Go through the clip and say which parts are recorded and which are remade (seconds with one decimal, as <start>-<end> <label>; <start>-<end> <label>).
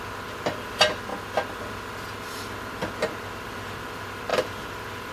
0.0-4.3 recorded; 4.3-5.1 remade